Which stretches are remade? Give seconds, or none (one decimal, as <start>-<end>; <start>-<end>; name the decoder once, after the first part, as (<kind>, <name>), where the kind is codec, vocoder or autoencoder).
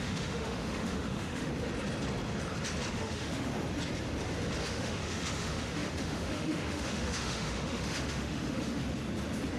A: 0.0-1.5 (autoencoder, DAC-VAE); 2.9-3.5; 4.6-8.8